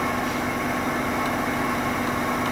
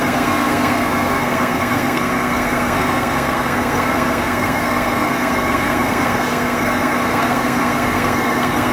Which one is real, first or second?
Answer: first